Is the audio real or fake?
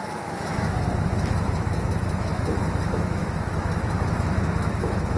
fake